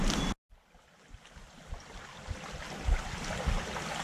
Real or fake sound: real